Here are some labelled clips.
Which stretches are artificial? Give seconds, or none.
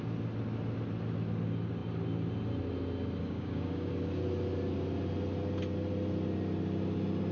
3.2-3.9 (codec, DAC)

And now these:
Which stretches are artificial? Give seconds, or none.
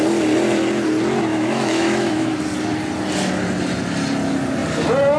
1.3-2.3 (autoencoder, DAC-VAE)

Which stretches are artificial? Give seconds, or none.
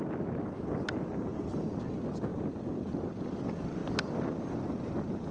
none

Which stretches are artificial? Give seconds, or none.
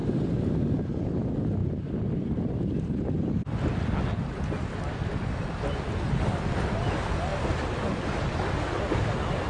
none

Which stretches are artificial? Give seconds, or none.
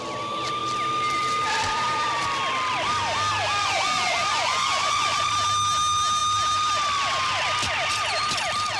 3.6-5.3 (vocoder, Vocos)